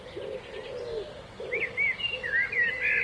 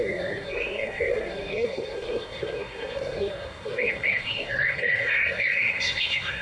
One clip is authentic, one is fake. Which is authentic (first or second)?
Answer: first